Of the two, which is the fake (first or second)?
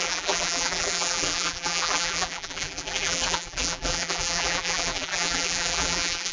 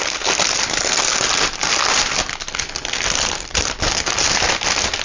first